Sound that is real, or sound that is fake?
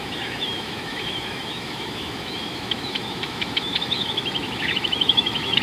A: fake